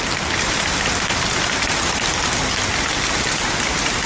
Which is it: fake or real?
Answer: real